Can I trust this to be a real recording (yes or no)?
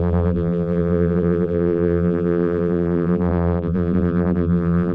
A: no